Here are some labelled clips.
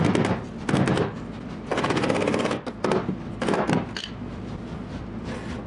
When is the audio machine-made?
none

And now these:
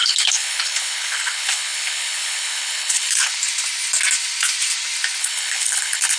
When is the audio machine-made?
0.0-3.3 (codec, HILCodec); 5.2-6.2